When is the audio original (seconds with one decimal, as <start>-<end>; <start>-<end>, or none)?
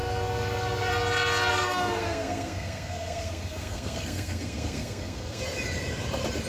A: 0.9-1.5; 5.4-6.5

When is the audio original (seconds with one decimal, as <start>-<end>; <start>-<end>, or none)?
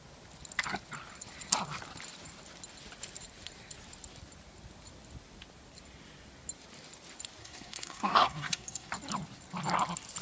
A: 0.0-7.4; 8.9-10.2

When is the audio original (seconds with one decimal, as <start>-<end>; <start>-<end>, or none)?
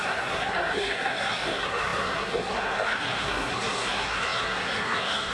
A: none